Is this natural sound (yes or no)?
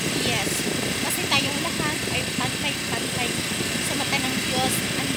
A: yes